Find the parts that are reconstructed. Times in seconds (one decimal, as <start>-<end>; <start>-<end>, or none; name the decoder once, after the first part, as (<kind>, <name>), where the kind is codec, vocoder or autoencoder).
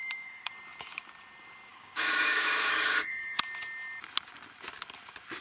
0.0-0.5 (codec, DAC); 1.7-3.4